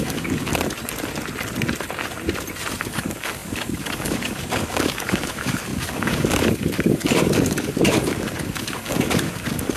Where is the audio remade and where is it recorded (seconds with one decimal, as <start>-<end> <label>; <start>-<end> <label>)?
0.0-0.5 remade; 0.5-2.8 recorded; 2.8-9.8 remade